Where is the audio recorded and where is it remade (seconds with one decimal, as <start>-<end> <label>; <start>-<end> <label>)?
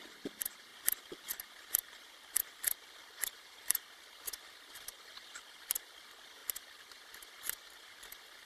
0.0-0.7 remade; 0.7-2.6 recorded; 2.6-8.5 remade